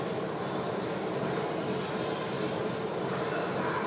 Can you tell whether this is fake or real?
real